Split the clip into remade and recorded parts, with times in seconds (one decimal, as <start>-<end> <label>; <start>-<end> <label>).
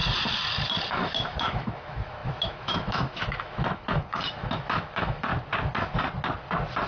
0.0-0.9 recorded; 0.9-5.3 remade; 5.3-6.9 recorded